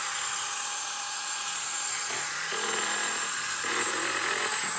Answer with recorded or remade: remade